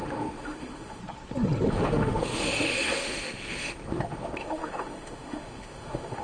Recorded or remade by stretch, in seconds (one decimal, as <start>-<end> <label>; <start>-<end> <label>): 0.0-1.0 remade; 1.0-1.7 recorded; 1.7-6.2 remade